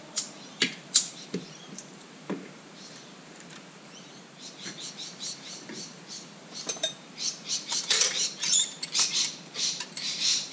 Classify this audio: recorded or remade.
remade